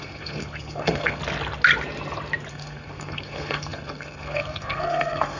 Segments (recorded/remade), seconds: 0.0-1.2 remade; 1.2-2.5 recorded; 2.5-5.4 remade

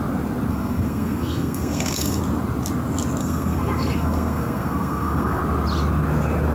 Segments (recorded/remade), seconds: 0.0-0.5 recorded; 0.5-2.2 remade; 2.2-3.2 recorded; 3.2-5.4 remade; 5.4-6.5 recorded

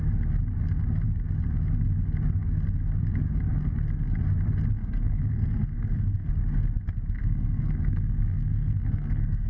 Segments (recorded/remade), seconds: 0.0-4.8 recorded; 4.8-6.3 remade; 6.3-7.2 recorded; 7.2-9.5 remade

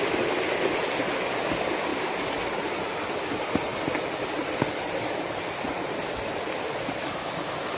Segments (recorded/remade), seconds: 0.0-7.8 recorded

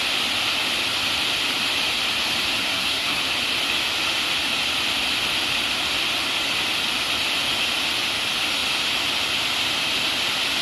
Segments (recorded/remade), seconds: 0.0-2.6 recorded; 2.6-3.2 remade; 3.2-10.6 recorded